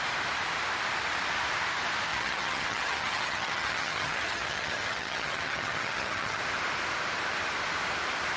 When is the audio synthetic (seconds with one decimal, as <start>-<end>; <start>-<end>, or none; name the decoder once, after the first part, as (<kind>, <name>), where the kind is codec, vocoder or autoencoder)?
2.1-6.4 (vocoder, HiFi-GAN)